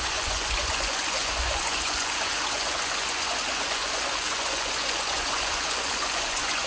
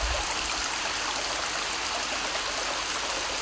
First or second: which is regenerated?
first